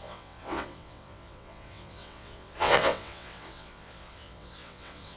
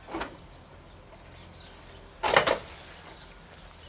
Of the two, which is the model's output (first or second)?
first